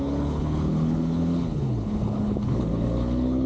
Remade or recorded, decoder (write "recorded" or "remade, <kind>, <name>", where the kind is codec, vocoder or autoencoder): remade, codec, HILCodec